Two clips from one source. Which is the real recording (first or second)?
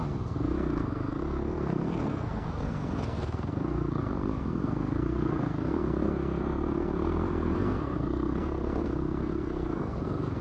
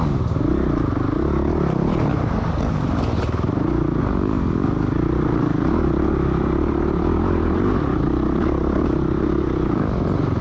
second